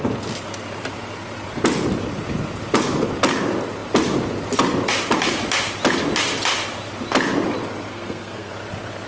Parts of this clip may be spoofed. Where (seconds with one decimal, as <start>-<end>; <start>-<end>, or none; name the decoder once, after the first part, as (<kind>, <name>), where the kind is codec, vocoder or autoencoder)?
7.9-8.5 (codec, SNAC)